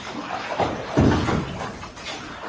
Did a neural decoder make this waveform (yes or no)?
no